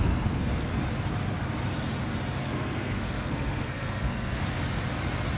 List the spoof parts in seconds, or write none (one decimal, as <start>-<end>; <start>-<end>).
0.0-0.7; 2.4-4.4